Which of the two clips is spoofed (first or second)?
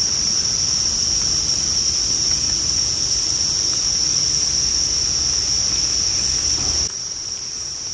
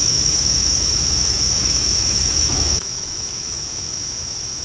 second